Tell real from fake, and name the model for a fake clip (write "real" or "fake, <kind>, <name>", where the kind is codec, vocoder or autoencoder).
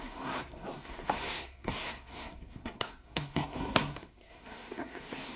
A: fake, codec, SNAC